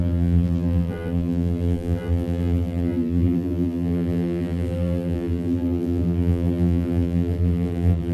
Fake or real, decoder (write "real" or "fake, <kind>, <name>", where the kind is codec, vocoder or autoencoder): fake, vocoder, BigVGAN v2